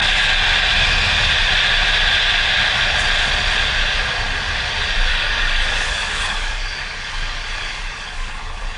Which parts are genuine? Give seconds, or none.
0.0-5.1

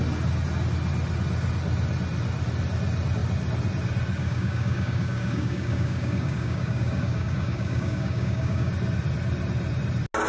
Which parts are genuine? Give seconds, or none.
0.0-4.2; 8.7-10.3

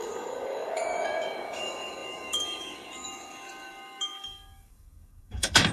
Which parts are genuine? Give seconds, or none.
none